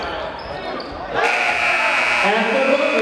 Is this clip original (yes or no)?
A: yes